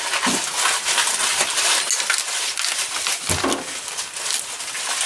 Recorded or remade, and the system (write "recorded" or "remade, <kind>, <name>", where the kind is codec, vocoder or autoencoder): recorded